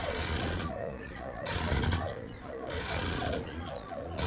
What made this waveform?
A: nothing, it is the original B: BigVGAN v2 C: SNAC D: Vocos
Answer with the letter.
D